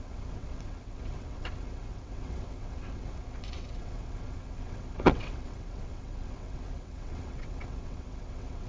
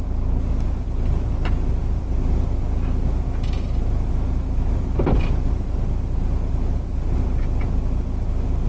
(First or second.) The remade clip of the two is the first